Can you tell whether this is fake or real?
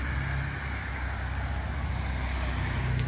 real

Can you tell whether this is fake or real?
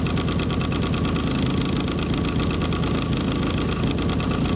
real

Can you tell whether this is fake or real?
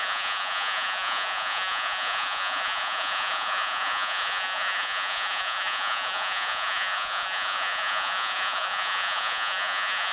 fake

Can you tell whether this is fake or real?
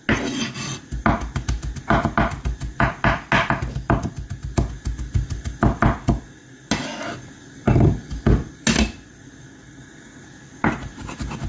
real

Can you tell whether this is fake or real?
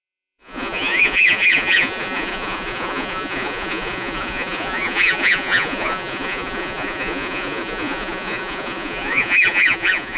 fake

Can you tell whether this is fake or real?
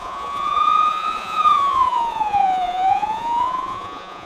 fake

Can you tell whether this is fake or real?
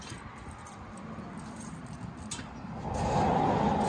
real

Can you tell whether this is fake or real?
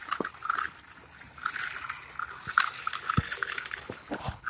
real